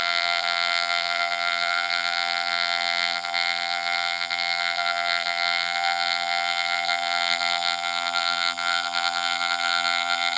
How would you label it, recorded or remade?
remade